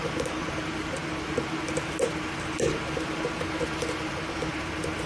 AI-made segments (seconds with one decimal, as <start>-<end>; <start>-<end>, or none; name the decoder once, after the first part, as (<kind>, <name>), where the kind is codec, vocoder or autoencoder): none